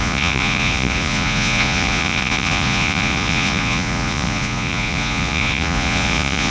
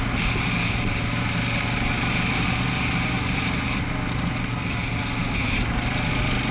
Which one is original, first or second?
second